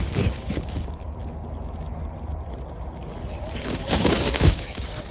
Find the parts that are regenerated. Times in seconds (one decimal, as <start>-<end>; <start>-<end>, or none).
0.0-1.2; 3.6-5.1